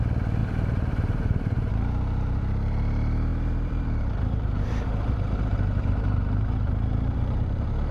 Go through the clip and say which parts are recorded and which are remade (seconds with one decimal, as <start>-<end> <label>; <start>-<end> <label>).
0.0-0.4 recorded; 0.4-2.4 remade; 2.4-3.3 recorded; 3.3-7.9 remade